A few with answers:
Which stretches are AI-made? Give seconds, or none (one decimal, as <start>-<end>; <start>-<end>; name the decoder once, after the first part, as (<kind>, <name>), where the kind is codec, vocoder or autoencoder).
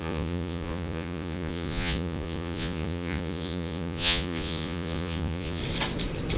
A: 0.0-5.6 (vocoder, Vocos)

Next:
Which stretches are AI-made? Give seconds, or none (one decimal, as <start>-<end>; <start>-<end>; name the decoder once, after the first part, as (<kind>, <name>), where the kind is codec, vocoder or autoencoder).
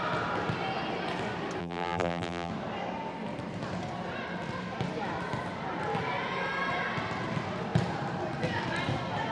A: 1.6-2.5 (vocoder, BigVGAN v2)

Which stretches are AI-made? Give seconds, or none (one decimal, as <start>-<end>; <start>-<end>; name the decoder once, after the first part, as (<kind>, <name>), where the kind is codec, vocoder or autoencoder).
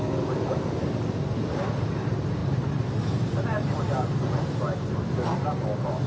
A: 2.4-5.0 (vocoder, BigVGAN v2)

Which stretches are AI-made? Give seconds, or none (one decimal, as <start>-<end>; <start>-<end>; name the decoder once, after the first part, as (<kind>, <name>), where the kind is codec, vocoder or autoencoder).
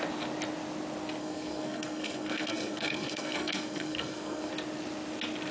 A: 1.2-4.5 (codec, SNAC)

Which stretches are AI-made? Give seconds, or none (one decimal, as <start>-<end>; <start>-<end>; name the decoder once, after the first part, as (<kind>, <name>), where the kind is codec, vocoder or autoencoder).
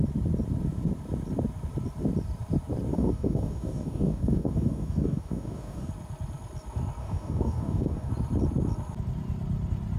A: 2.9-5.9 (codec, DAC); 7.0-8.1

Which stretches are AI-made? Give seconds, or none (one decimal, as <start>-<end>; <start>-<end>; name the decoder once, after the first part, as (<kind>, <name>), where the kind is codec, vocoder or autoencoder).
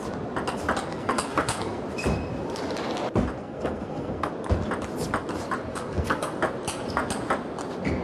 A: 0.9-1.8 (codec, SNAC); 3.4-4.3; 5.7-6.4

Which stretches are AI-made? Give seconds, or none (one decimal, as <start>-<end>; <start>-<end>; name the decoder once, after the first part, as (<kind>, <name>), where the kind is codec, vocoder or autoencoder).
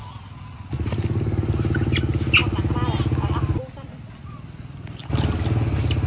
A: none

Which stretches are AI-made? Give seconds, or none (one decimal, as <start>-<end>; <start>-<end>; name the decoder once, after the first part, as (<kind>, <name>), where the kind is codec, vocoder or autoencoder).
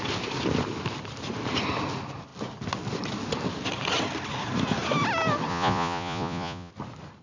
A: 5.5-6.7 (vocoder, Vocos)